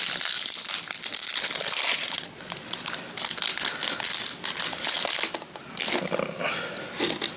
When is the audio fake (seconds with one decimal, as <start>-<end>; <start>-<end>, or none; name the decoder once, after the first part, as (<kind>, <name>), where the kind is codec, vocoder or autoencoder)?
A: 1.9-2.9 (vocoder, Vocos)